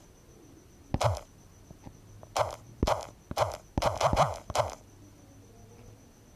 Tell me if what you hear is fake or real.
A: real